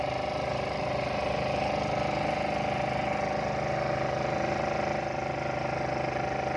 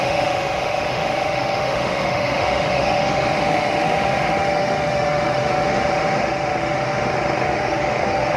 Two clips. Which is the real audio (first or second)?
first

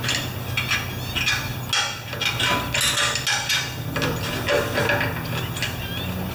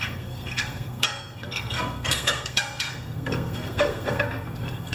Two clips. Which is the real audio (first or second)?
first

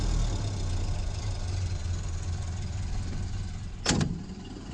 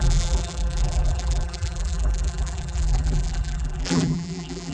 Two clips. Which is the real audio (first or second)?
first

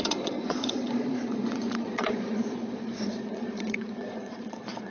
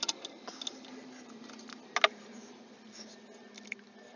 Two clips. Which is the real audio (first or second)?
second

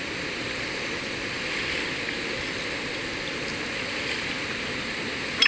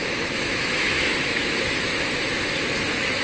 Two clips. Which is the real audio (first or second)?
first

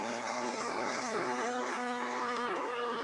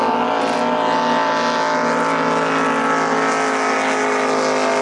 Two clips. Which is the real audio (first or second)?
second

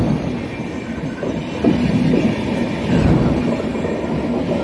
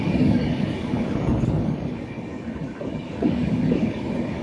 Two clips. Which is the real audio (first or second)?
first